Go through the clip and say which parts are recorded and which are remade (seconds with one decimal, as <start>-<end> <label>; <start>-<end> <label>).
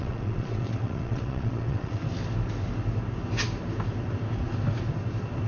0.0-2.0 remade; 2.0-5.5 recorded